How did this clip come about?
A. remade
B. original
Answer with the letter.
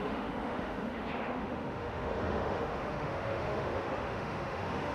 A